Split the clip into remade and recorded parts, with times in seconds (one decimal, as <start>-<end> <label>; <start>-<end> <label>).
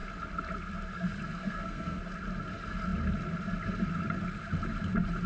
0.0-1.4 recorded; 1.4-2.0 remade; 2.0-5.3 recorded